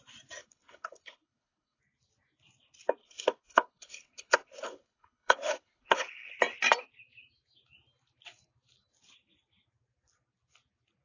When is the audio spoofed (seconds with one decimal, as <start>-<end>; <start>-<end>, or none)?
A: 0.4-1.8; 3.0-6.3

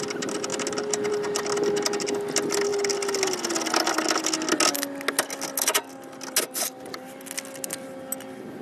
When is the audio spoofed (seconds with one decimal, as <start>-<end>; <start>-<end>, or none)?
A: none

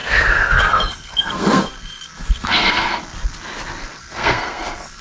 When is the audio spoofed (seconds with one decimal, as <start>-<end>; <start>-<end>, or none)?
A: 0.0-3.0; 3.8-5.0

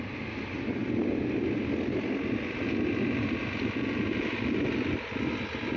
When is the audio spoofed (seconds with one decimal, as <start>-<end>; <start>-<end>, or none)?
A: none

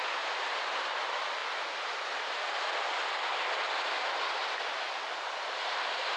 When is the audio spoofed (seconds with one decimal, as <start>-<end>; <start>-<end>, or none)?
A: none